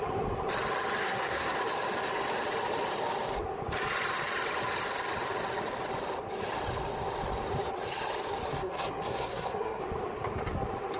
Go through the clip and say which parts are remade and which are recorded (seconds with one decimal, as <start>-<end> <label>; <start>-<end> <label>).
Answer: 0.0-1.0 recorded; 1.0-1.6 remade; 1.6-8.5 recorded; 8.5-9.8 remade; 9.8-11.0 recorded